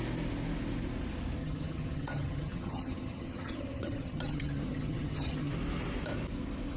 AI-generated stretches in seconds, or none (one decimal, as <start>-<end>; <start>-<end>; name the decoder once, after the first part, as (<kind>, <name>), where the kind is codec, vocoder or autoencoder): 1.4-5.5 (vocoder, HiFi-GAN)